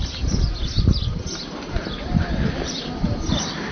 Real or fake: fake